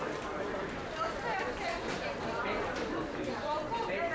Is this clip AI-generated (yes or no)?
no